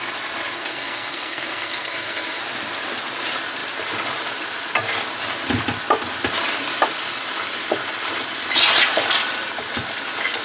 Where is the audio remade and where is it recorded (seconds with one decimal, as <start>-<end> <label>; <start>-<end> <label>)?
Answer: 0.0-0.6 recorded; 0.6-2.4 remade; 2.4-10.4 recorded